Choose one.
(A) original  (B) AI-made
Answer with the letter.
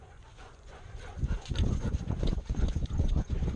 B